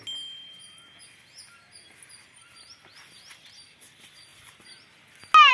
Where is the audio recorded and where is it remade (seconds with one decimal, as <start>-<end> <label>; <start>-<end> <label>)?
0.0-5.5 recorded